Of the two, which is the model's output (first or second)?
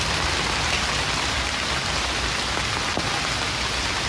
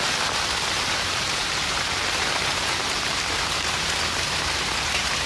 second